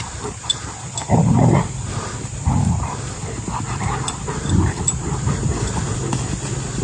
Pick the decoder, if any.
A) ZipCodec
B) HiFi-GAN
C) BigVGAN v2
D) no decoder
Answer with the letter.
C